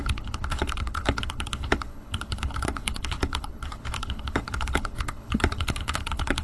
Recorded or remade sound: remade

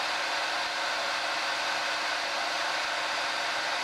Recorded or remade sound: recorded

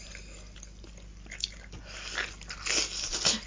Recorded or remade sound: remade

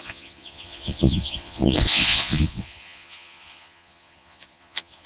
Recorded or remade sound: remade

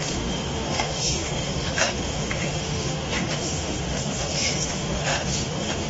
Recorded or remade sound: remade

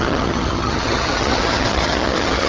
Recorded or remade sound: remade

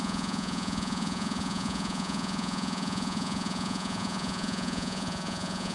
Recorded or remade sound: remade